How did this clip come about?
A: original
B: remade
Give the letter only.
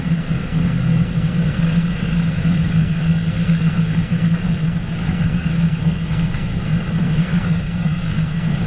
B